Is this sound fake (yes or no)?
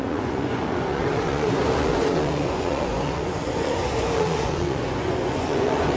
yes